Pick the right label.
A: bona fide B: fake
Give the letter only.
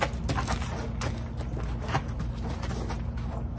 A